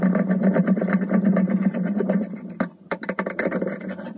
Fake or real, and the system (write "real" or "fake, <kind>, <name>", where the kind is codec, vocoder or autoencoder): fake, vocoder, BigVGAN v2